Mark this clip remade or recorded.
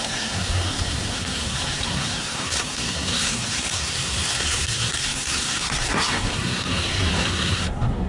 remade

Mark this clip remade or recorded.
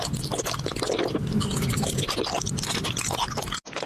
recorded